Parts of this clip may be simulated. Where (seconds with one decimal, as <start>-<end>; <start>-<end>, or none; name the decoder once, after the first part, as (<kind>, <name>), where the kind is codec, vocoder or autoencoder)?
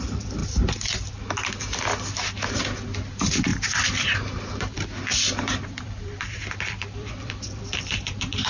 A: 0.0-0.4 (vocoder, BigVGAN v2); 3.1-3.5; 4.6-8.5